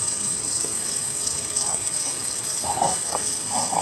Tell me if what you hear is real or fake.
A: fake